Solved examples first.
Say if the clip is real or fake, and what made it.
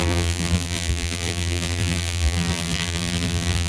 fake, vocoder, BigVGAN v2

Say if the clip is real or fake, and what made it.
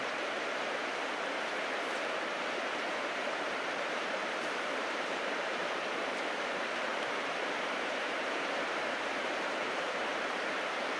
fake, vocoder, BigVGAN v2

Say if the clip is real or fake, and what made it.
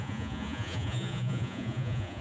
fake, vocoder, Vocos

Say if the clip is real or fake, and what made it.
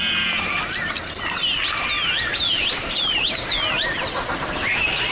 real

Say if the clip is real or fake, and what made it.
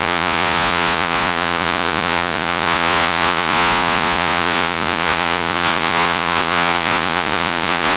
fake, vocoder, Vocos